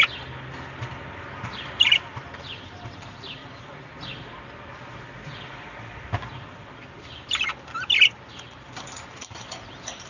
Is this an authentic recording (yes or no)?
yes